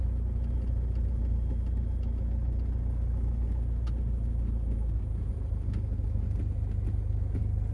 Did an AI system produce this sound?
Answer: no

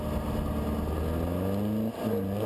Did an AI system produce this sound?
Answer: no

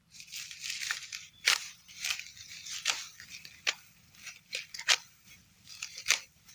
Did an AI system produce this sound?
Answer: no